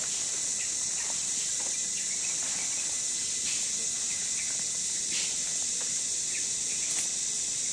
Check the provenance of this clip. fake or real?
real